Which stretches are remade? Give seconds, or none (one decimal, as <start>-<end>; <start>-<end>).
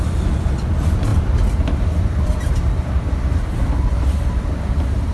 1.1-4.2